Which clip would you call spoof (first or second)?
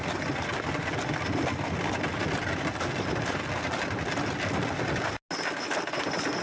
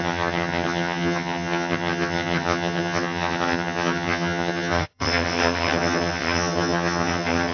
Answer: second